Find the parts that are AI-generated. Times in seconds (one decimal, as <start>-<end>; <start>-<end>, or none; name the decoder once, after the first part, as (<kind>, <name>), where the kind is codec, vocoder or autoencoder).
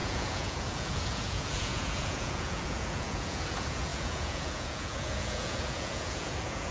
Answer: 0.0-6.7 (vocoder, Vocos)